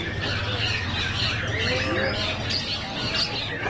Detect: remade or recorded recorded